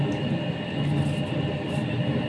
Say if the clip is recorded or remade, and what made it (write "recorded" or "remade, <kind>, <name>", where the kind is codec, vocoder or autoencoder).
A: recorded